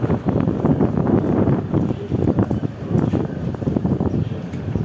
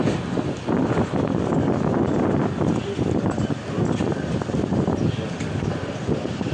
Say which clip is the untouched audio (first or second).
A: second